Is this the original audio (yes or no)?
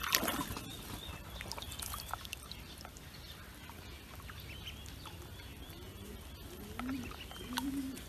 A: yes